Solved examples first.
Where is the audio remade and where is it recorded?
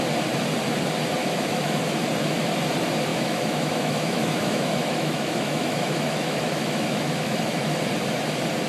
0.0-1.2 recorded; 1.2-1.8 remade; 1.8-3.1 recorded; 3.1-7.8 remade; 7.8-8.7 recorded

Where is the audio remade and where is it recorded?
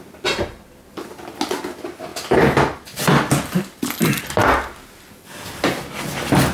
0.0-6.5 recorded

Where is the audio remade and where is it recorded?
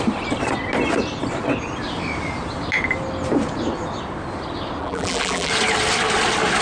0.0-4.8 recorded; 4.8-5.5 remade; 5.5-6.6 recorded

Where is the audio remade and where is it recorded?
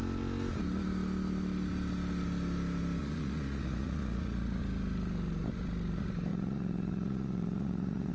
0.0-3.0 recorded; 3.0-4.6 remade; 4.6-6.3 recorded; 6.3-8.1 remade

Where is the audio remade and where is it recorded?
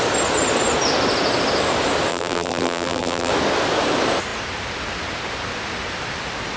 0.0-2.1 recorded; 2.1-3.3 remade; 3.3-6.6 recorded